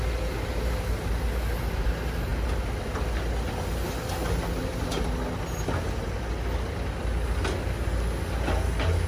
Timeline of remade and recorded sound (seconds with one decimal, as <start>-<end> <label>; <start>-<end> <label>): 0.0-9.1 recorded